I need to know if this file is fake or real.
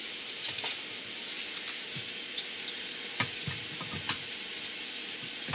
real